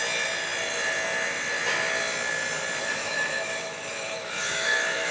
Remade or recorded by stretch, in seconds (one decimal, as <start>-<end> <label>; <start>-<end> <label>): 0.0-3.0 recorded; 3.0-5.1 remade